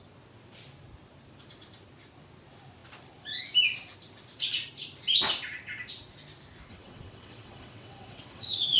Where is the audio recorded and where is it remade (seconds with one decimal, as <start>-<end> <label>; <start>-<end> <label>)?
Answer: 0.0-6.7 recorded; 6.7-8.8 remade

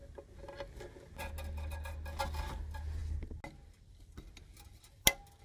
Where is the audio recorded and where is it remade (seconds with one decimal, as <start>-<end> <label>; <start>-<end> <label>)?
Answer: 0.0-5.4 recorded